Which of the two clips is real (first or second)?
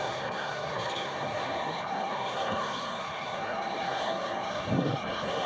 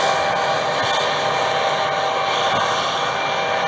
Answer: second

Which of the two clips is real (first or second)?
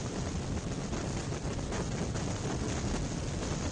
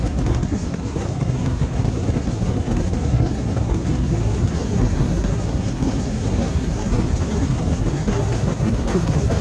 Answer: first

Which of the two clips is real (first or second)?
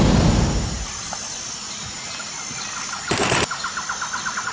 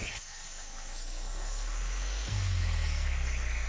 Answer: first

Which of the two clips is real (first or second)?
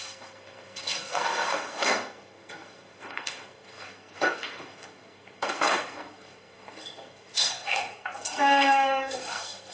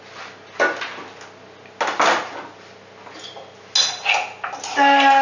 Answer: second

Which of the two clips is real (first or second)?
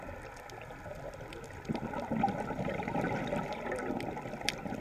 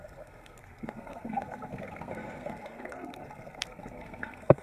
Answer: first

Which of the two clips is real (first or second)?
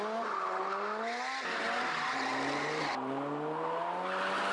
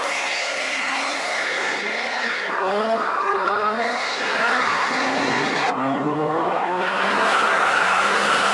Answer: first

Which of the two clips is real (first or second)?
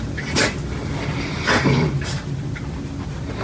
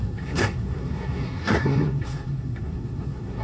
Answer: first